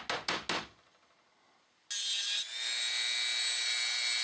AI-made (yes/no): no